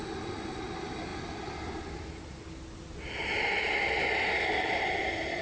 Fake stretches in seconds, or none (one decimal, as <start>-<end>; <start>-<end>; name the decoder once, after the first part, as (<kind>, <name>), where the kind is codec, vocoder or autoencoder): none